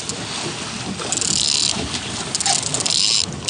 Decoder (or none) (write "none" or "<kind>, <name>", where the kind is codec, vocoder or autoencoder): none